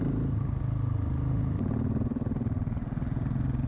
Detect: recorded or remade recorded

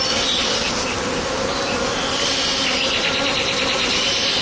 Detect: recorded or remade recorded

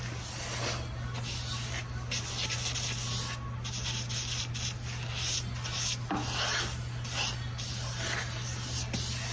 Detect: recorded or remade recorded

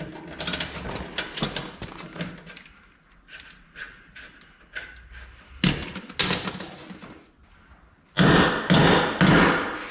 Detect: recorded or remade recorded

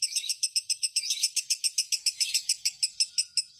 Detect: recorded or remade remade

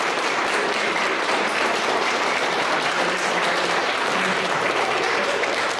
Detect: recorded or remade remade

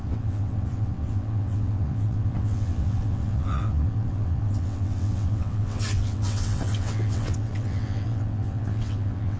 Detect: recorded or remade remade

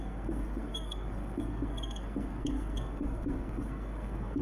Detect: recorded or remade remade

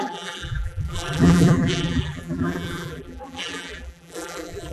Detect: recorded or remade remade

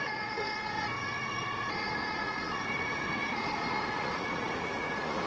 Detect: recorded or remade remade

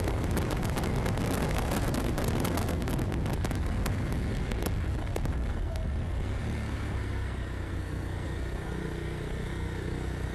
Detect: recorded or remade remade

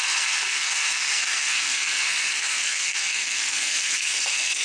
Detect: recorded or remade remade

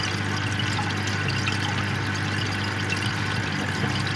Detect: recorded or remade recorded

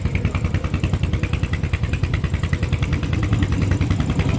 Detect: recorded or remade recorded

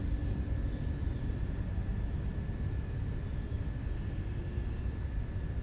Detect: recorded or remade recorded